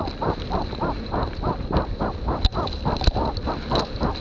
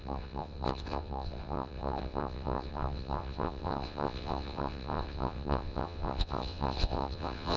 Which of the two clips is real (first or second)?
first